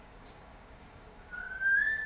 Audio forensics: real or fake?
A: fake